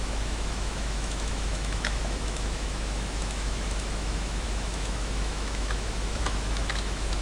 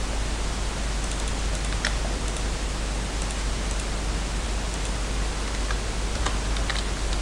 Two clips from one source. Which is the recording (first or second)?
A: second